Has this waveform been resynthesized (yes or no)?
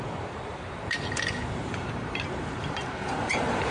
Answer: yes